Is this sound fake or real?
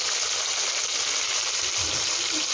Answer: real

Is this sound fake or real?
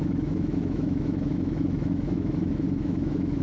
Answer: fake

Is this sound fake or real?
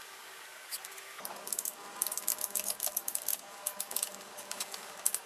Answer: fake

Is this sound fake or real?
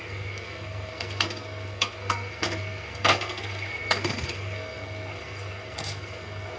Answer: fake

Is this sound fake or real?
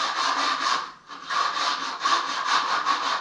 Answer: real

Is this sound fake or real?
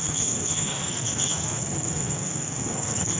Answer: fake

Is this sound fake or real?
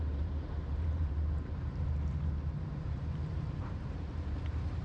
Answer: fake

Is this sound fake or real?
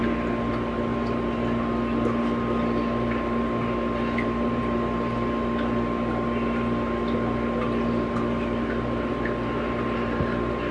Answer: real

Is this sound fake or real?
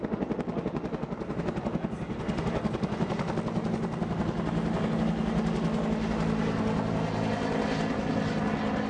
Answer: real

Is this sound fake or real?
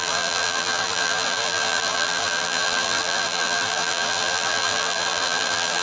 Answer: fake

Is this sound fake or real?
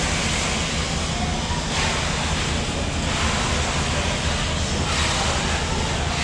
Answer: real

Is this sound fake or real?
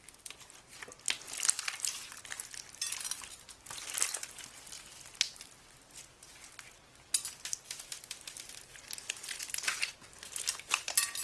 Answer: real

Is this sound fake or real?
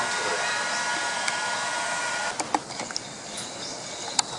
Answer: real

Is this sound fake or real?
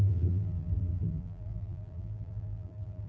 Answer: fake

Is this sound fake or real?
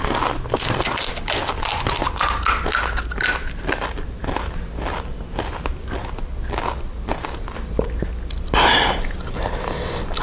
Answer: real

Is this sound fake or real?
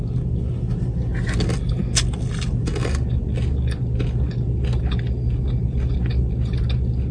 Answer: real